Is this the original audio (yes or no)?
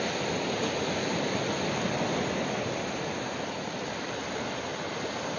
yes